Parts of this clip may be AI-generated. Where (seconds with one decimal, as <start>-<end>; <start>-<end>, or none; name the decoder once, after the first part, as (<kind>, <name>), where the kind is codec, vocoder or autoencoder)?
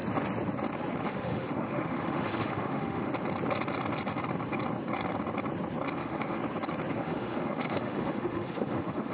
1.0-3.1 (autoencoder, DAC-VAE); 6.0-6.4; 6.9-9.1